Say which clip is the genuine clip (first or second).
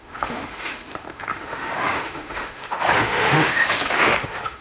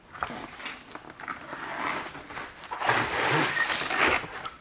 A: second